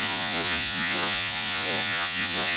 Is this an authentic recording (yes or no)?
no